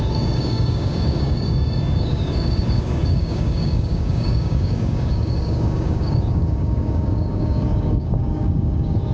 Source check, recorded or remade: remade